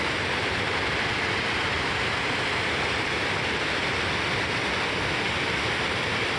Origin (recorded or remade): recorded